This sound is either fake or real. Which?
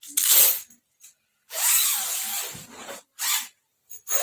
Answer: real